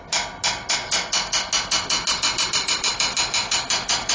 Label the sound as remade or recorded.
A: recorded